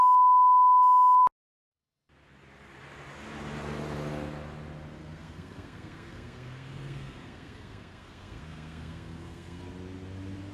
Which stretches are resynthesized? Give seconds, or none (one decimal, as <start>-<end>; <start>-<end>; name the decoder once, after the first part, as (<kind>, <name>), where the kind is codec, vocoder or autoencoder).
5.0-9.6 (codec, SNAC)